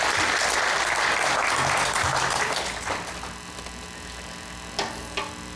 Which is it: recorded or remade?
recorded